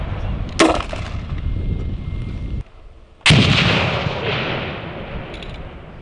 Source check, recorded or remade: recorded